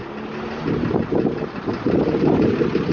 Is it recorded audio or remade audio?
recorded